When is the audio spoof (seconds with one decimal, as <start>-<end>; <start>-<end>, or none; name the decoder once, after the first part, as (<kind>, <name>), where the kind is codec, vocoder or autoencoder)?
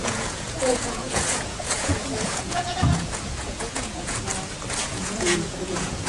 0.0-4.3 (vocoder, Vocos); 4.9-6.1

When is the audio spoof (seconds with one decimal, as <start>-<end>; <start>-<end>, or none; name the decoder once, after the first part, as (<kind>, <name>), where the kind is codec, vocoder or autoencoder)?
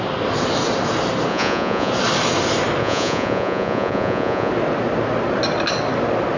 1.3-1.9 (vocoder, Vocos); 2.8-4.5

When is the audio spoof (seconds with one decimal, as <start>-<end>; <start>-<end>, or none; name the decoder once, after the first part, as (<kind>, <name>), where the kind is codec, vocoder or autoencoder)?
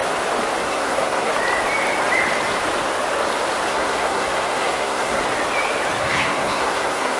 0.6-1.3 (codec, SNAC); 3.7-5.2; 6.0-7.2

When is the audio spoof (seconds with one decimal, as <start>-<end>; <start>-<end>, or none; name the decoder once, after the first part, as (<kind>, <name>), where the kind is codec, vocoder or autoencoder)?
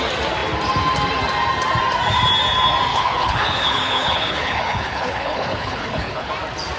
2.9-6.3 (codec, HILCodec)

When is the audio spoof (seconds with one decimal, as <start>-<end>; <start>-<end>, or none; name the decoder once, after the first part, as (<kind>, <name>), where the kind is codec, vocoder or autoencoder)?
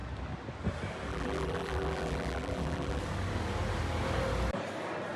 1.1-3.0 (vocoder, BigVGAN v2)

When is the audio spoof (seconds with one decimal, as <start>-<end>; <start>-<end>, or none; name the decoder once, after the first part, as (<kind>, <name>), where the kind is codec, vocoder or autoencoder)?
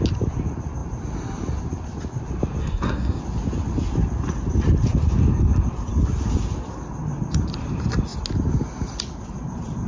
2.6-3.2 (codec, SNAC)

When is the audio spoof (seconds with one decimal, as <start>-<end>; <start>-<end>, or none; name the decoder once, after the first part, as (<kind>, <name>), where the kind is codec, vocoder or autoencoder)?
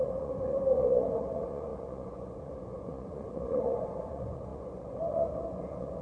0.0-6.0 (vocoder, Vocos)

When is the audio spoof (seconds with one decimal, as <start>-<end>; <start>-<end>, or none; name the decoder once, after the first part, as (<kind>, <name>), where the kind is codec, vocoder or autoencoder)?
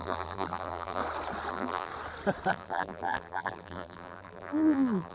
0.0-1.0 (vocoder, BigVGAN v2); 1.5-1.9; 2.5-5.1